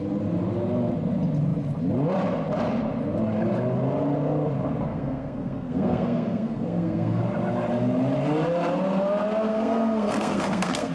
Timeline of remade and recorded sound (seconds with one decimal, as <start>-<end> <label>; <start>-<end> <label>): 0.0-4.9 recorded; 4.9-7.2 remade; 7.2-9.5 recorded; 9.5-10.9 remade

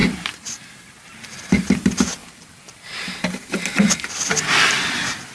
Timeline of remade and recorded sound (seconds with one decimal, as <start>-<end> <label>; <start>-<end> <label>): 0.0-0.7 remade; 0.7-2.2 recorded; 2.2-3.6 remade; 3.6-5.3 recorded

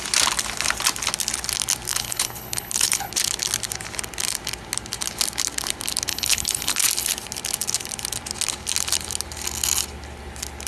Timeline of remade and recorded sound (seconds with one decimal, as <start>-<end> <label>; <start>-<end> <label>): 0.0-1.9 recorded; 1.9-3.1 remade; 3.1-6.1 recorded; 6.1-6.8 remade; 6.8-10.7 recorded

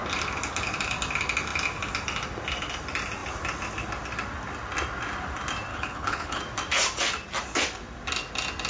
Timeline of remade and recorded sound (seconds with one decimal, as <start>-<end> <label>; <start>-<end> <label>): 0.0-5.7 recorded; 5.7-6.4 remade; 6.4-8.7 recorded

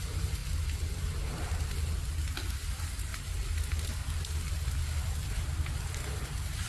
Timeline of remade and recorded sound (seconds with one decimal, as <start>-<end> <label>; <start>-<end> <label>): 0.0-0.4 remade; 0.4-2.5 recorded; 2.5-3.1 remade; 3.1-6.0 recorded; 6.0-6.7 remade